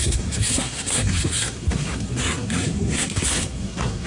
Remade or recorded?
remade